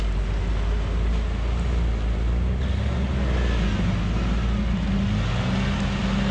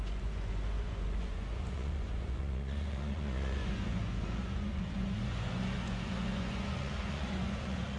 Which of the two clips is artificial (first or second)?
second